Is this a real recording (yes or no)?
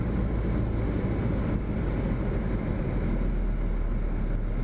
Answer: yes